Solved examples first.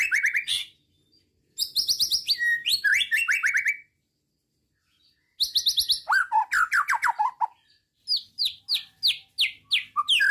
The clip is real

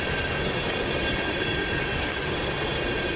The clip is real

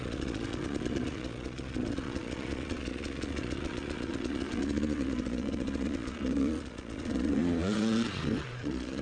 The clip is fake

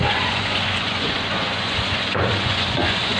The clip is fake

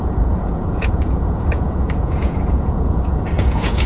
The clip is fake